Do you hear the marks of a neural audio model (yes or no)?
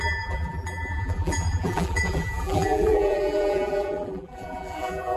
yes